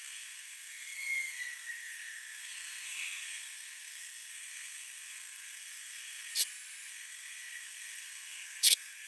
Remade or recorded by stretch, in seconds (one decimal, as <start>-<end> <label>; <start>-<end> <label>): 0.0-6.3 remade; 6.3-6.9 recorded; 6.9-9.1 remade